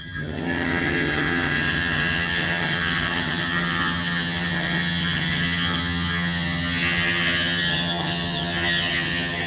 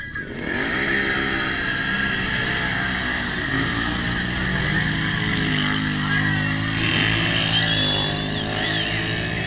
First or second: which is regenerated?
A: first